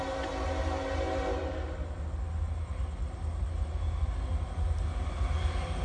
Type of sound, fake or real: real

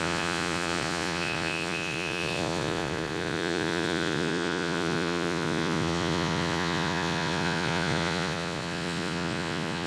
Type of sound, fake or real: fake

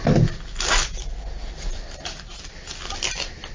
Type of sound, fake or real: real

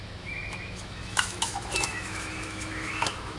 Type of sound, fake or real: fake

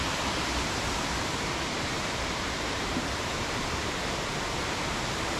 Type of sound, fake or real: fake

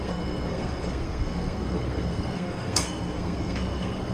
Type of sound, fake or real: fake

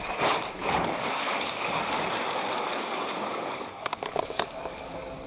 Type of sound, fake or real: fake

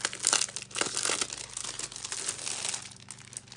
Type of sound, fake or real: real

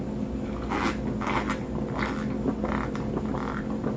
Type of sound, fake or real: real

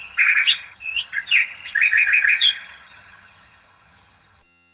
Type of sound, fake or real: fake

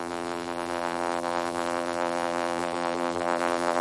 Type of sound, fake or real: fake